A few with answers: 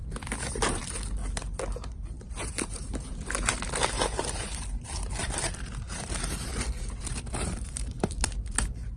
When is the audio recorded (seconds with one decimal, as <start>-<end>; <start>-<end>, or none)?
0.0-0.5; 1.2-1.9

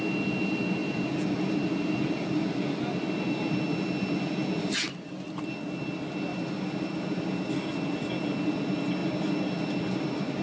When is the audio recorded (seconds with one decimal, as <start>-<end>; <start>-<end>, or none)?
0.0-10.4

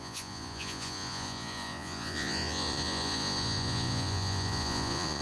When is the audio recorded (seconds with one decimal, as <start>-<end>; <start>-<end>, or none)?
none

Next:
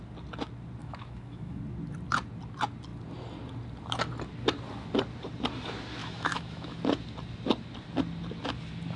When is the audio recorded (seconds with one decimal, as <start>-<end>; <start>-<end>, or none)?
0.0-0.8; 1.6-6.0; 6.8-9.0

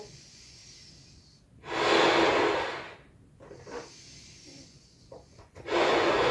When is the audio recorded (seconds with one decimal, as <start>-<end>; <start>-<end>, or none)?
0.6-4.4